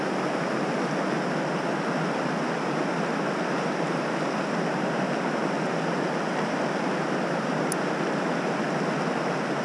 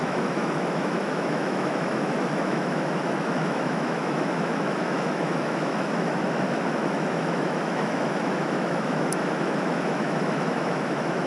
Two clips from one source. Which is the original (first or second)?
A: first